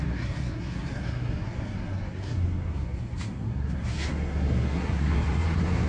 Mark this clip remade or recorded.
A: remade